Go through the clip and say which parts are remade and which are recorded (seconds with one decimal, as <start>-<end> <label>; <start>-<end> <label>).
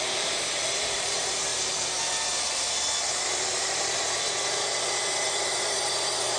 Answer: 0.0-1.5 remade; 1.5-5.3 recorded; 5.3-6.4 remade